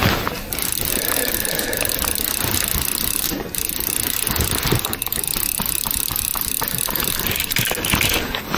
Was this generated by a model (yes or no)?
no